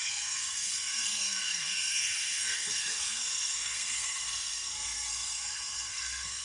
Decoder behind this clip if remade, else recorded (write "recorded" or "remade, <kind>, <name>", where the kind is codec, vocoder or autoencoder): remade, codec, SNAC